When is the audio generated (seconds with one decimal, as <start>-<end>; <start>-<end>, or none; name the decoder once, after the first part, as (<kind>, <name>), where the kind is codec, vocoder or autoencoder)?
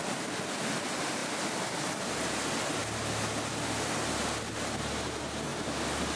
5.5-6.2 (vocoder, BigVGAN v2)